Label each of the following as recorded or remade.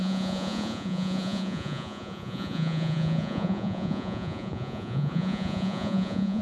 remade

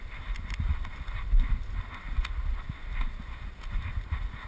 recorded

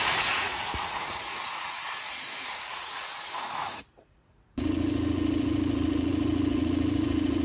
remade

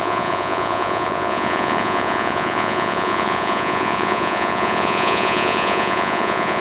remade